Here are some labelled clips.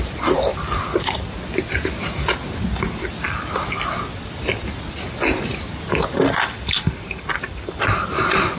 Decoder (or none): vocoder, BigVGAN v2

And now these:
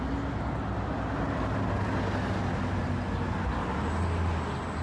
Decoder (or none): none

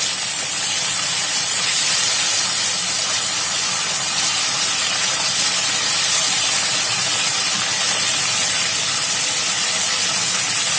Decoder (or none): none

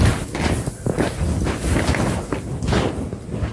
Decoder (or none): none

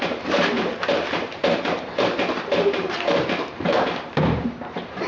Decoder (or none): vocoder, BigVGAN v2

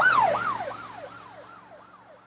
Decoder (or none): none